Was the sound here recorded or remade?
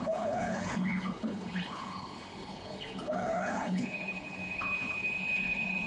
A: remade